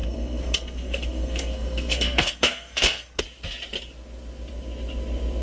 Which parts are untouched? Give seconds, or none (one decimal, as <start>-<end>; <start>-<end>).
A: 3.2-5.4